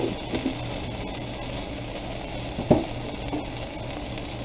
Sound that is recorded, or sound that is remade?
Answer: recorded